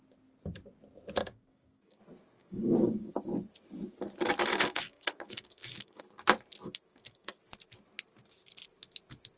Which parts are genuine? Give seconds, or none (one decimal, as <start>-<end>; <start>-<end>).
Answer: 0.0-1.2; 2.0-2.4; 3.1-4.5; 6.0-6.6; 7.3-9.4